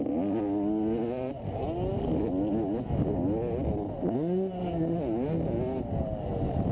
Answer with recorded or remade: recorded